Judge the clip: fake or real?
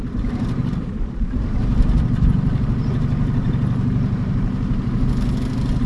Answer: real